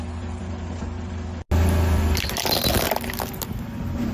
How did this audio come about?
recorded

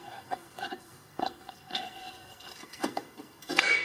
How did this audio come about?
remade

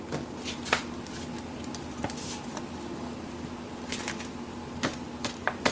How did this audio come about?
recorded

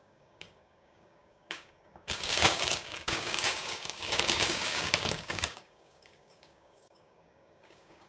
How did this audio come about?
remade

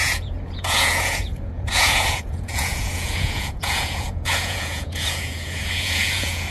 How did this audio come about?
remade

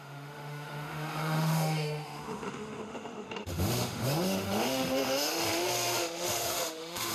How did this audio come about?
remade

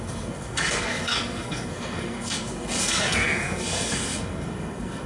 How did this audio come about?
remade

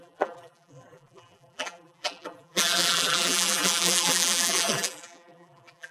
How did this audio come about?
remade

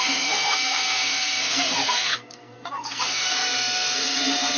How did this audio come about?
remade